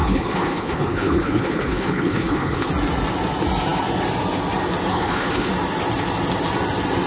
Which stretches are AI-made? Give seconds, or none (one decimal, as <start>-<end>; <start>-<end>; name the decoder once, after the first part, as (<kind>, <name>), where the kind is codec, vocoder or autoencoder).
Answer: 0.0-2.7 (codec, HILCodec); 4.9-5.5